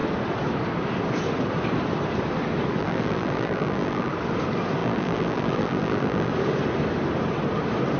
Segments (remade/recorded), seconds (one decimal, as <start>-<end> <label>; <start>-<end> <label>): 0.0-2.8 recorded; 2.8-4.1 remade; 4.1-4.8 recorded; 4.8-6.3 remade; 6.3-8.0 recorded